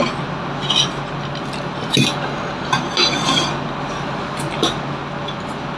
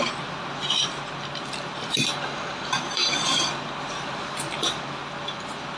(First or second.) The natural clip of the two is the first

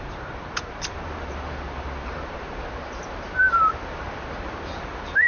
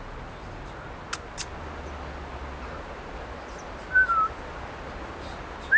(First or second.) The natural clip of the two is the second